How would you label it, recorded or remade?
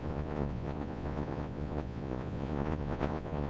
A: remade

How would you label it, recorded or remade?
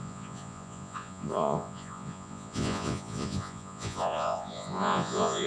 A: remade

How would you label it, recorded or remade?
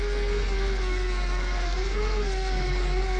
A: remade